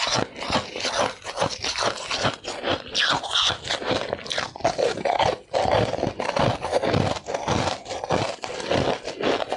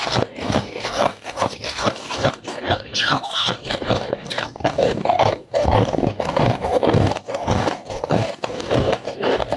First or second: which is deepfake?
second